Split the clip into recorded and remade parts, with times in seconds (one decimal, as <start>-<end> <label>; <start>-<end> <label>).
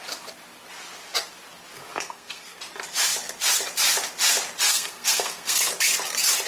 0.0-1.9 recorded; 1.9-2.6 remade; 2.6-4.7 recorded; 4.7-5.7 remade; 5.7-6.5 recorded